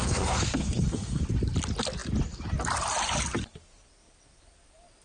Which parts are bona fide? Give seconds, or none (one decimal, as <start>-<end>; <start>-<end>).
1.2-5.0